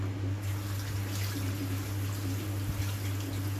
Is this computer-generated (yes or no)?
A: no